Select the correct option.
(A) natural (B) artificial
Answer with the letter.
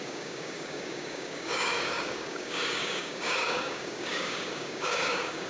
B